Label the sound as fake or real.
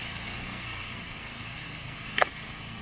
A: fake